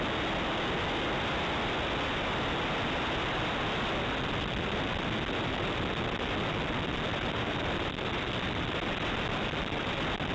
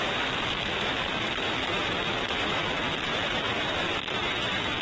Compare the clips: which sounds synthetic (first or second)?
second